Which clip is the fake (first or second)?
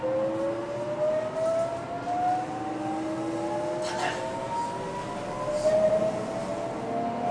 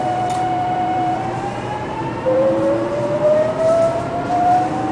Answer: second